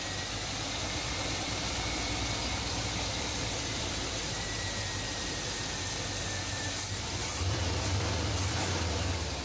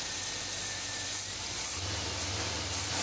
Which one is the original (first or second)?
second